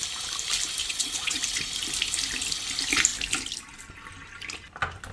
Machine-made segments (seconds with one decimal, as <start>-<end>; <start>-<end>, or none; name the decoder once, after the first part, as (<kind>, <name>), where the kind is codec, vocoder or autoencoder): 0.8-1.4 (vocoder, WaveNeXt)